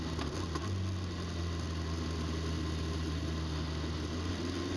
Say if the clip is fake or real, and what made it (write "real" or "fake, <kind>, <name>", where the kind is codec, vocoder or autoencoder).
real